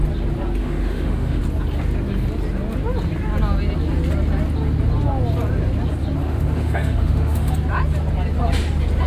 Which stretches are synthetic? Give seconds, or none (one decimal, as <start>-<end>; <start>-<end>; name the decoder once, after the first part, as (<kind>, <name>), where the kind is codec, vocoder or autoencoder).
0.6-1.4 (autoencoder, DAC-VAE); 6.2-7.5